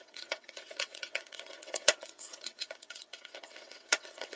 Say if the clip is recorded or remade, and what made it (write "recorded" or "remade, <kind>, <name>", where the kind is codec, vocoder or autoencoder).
remade, vocoder, WaveNeXt